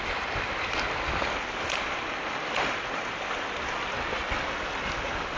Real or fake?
real